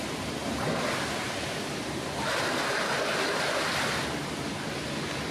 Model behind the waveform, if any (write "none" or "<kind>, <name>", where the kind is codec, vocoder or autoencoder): none